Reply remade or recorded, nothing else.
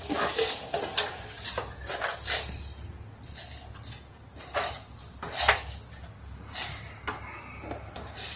recorded